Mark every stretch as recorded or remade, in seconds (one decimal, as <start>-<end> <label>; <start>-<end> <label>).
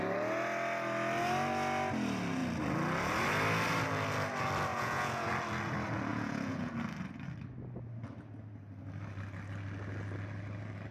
0.0-4.7 recorded; 4.7-5.3 remade; 5.3-6.1 recorded; 6.1-6.7 remade; 6.7-10.9 recorded